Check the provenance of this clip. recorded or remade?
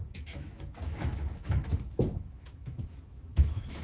remade